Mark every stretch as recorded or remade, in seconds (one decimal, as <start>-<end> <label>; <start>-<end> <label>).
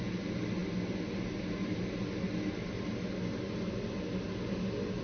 0.0-5.0 recorded